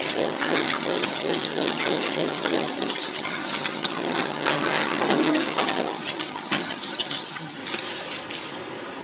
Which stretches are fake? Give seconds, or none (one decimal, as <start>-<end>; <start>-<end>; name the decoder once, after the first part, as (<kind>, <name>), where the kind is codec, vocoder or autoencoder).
0.0-7.6 (vocoder, HiFi-GAN)